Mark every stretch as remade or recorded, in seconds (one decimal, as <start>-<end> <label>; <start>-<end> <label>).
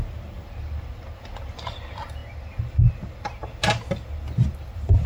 0.0-5.1 recorded